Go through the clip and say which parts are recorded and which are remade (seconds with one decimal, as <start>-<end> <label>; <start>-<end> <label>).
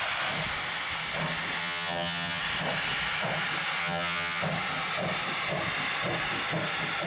0.0-1.6 recorded; 1.6-2.4 remade; 2.4-3.8 recorded; 3.8-4.4 remade; 4.4-7.1 recorded